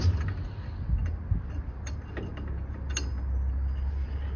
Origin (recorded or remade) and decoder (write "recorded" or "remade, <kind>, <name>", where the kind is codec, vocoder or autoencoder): recorded